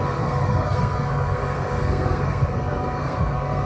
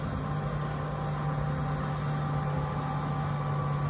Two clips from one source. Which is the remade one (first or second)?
first